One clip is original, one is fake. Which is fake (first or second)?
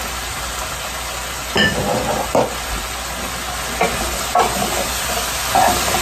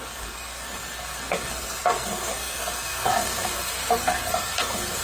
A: second